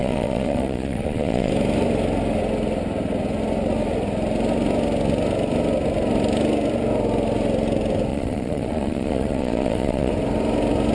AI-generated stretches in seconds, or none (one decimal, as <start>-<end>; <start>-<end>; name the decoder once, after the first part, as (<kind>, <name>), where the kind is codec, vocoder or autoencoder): 0.0-1.5 (vocoder, Vocos); 8.1-10.1